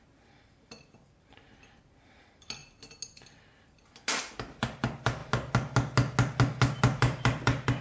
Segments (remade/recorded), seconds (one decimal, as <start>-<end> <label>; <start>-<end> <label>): 0.0-2.6 remade; 2.6-3.4 recorded; 3.4-5.2 remade; 5.2-7.0 recorded; 7.0-7.8 remade